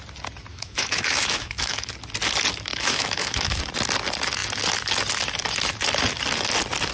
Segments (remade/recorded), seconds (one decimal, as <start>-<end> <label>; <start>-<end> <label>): 0.0-0.5 recorded; 0.5-1.9 remade; 1.9-2.7 recorded; 2.7-3.6 remade; 3.6-6.9 recorded